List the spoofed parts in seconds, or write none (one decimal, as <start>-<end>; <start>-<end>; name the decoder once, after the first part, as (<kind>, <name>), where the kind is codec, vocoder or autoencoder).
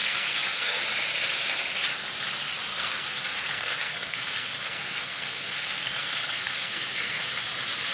0.0-0.8 (codec, SNAC); 2.7-7.2